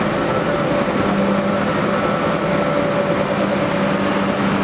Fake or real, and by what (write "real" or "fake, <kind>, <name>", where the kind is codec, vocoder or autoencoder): real